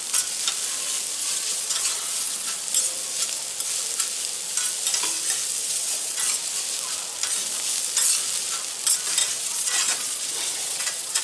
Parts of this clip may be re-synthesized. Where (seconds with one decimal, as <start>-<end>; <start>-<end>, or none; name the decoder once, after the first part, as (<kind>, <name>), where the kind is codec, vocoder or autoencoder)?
1.2-2.6 (vocoder, WaveNeXt); 5.6-6.2; 9.2-11.2